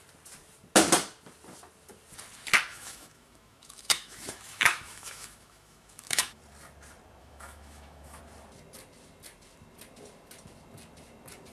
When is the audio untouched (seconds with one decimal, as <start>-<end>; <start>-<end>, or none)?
0.0-2.7; 6.4-7.2; 8.2-11.5